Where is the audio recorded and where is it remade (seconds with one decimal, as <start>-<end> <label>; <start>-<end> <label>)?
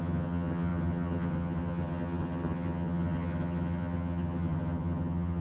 0.0-5.4 remade